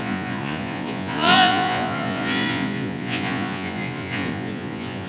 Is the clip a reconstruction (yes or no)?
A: yes